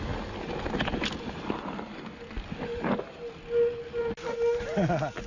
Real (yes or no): yes